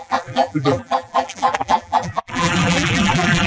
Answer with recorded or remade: remade